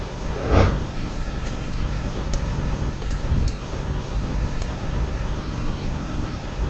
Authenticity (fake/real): fake